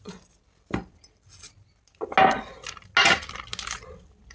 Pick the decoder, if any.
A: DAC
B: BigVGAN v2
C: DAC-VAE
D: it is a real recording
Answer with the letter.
D